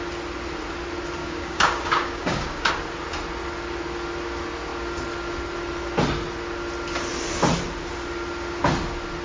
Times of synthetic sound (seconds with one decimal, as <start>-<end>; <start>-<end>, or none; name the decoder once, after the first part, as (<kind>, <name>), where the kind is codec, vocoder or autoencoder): 1.2-2.7 (codec, DAC)